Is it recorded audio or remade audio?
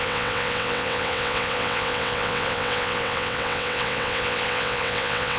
remade